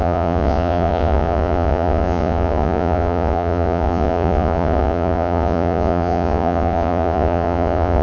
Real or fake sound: fake